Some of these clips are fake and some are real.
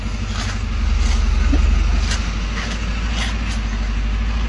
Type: real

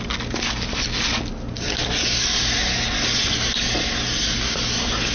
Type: real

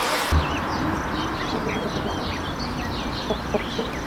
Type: real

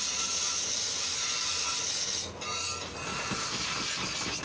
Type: real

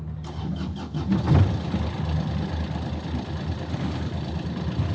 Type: real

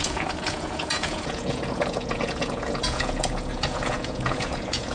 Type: fake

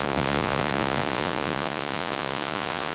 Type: fake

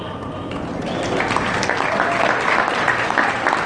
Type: real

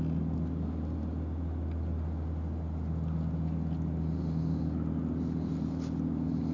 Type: real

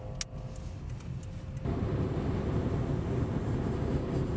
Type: real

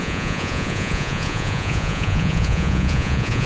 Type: fake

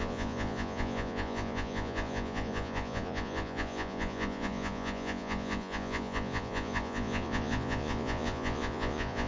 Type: fake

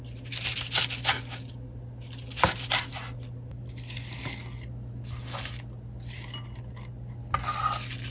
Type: real